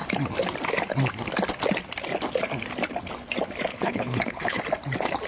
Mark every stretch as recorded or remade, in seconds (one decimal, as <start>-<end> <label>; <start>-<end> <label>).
0.0-3.7 recorded; 3.7-4.6 remade; 4.6-5.3 recorded